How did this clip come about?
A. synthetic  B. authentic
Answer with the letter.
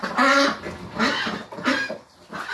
B